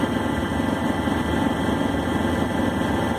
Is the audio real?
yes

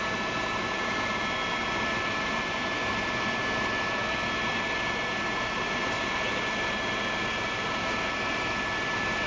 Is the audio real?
yes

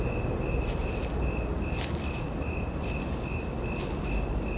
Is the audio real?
yes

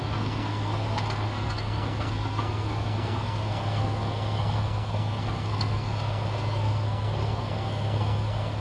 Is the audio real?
no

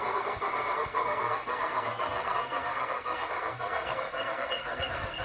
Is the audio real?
no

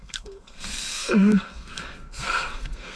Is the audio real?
no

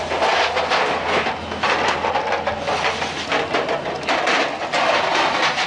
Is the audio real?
yes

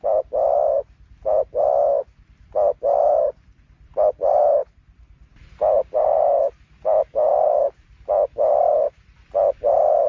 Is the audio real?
yes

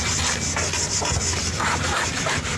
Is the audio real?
yes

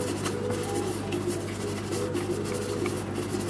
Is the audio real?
yes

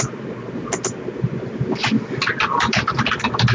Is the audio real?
yes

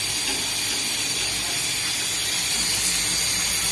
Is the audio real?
yes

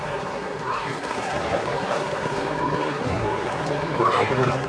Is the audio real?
no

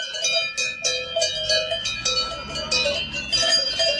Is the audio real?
yes